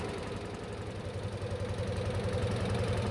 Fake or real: real